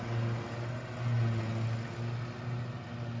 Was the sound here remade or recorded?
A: recorded